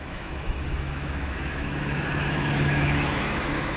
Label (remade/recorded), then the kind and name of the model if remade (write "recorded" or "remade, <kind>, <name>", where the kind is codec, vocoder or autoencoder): remade, autoencoder, DAC-VAE